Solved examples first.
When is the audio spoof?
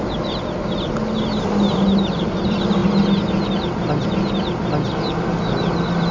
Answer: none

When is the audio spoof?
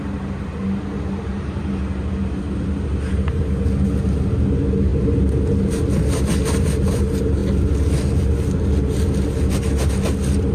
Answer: 1.3-1.8 (vocoder, BigVGAN v2)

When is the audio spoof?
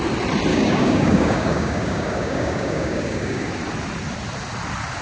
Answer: 0.5-3.5 (codec, DAC)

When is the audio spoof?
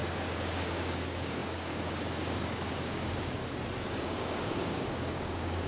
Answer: 0.0-3.4 (codec, DAC); 4.0-5.7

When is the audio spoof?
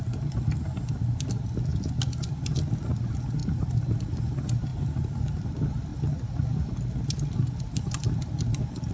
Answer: 1.7-2.6 (vocoder, BigVGAN v2); 3.4-4.1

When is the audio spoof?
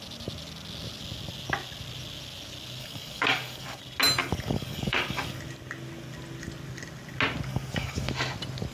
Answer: 2.8-3.8 (codec, DAC); 4.2-5.4; 7.5-8.1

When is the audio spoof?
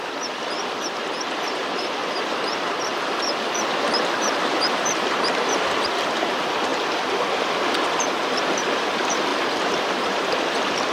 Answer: 0.0-10.9 (vocoder, BigVGAN v2)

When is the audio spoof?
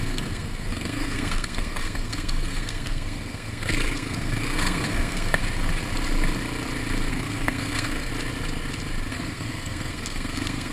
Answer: 0.0-5.4 (codec, SNAC); 7.1-8.1; 9.1-10.7